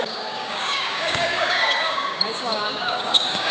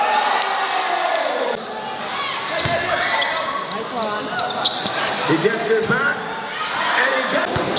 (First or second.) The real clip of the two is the second